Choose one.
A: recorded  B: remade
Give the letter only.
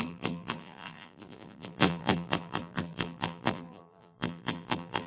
B